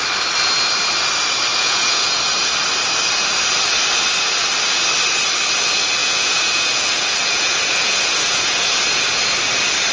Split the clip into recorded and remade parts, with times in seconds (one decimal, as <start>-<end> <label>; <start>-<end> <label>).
0.0-1.5 recorded; 1.5-2.1 remade; 2.1-6.0 recorded; 6.0-8.8 remade; 8.8-9.9 recorded